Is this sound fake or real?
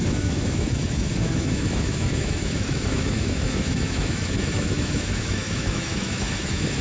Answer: fake